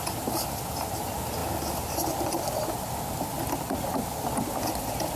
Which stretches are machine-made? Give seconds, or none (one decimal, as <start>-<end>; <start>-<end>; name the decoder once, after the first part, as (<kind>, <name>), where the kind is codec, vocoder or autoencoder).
none